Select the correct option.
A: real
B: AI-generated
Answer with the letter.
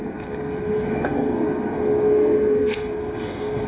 B